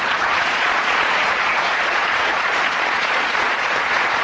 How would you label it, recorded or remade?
remade